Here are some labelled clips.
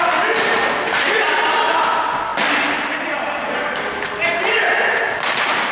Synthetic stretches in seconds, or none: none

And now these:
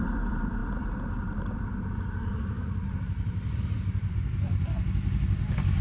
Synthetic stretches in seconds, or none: none